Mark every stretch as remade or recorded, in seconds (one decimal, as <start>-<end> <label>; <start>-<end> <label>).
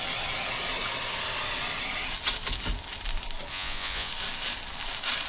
0.0-3.5 recorded; 3.5-4.1 remade; 4.1-5.3 recorded